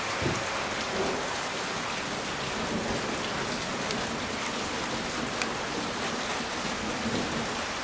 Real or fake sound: real